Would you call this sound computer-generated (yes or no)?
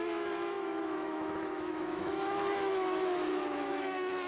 yes